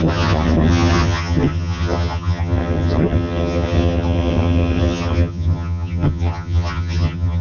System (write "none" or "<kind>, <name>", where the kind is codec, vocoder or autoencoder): vocoder, HiFi-GAN